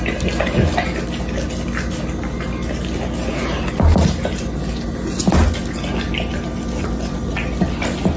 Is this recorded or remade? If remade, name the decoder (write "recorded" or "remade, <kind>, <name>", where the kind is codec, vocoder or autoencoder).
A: recorded